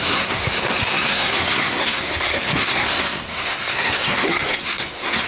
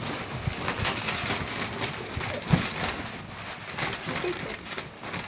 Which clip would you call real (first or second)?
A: second